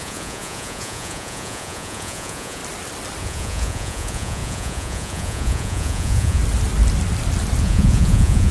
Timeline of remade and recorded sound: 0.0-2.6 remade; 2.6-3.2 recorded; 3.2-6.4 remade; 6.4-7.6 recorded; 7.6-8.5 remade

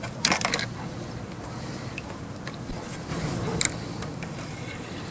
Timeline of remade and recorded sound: 0.0-5.1 recorded

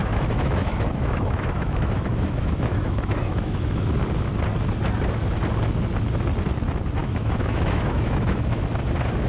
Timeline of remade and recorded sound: 0.0-3.8 remade; 3.8-7.0 recorded; 7.0-8.7 remade; 8.7-9.3 recorded

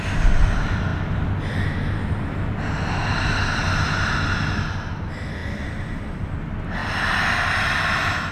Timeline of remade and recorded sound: 0.0-8.3 recorded

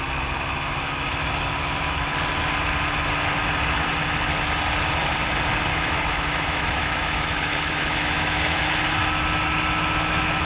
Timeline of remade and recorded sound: 0.0-5.7 recorded; 5.7-8.6 remade; 8.6-10.5 recorded

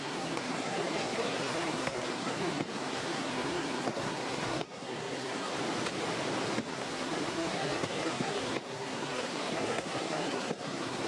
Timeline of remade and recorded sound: 0.0-5.5 remade; 5.5-6.7 recorded; 6.7-11.1 remade